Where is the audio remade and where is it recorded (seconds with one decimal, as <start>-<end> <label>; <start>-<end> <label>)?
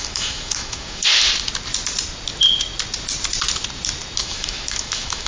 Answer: 0.0-1.0 remade; 1.0-4.2 recorded; 4.2-5.3 remade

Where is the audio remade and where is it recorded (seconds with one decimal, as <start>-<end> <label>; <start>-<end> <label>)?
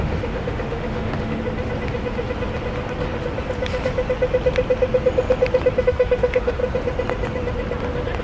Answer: 0.0-1.4 remade; 1.4-5.8 recorded; 5.8-6.6 remade; 6.6-8.2 recorded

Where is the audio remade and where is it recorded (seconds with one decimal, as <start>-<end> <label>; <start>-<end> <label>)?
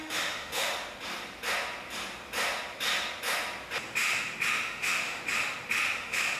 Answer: 0.0-0.7 remade; 0.7-4.5 recorded; 4.5-5.2 remade; 5.2-6.0 recorded; 6.0-6.4 remade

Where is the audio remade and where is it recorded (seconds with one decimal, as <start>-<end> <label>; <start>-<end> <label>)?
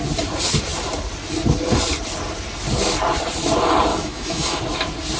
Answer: 0.0-3.9 recorded; 3.9-4.6 remade; 4.6-5.2 recorded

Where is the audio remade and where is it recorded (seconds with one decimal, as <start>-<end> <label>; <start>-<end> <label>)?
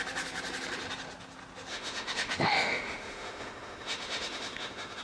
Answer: 0.0-1.7 recorded; 1.7-5.0 remade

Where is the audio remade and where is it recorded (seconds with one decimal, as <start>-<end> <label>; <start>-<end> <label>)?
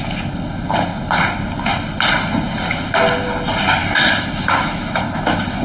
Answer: 0.0-3.8 recorded; 3.8-5.6 remade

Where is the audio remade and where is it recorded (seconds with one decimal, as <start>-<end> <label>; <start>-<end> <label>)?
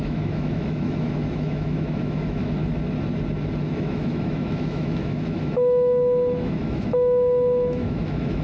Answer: 0.0-2.6 remade; 2.6-3.6 recorded; 3.6-8.4 remade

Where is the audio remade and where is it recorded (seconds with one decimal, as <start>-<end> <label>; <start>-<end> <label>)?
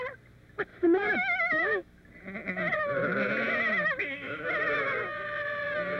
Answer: 0.0-0.7 recorded; 0.7-2.0 remade; 2.0-4.0 recorded; 4.0-4.5 remade; 4.5-6.0 recorded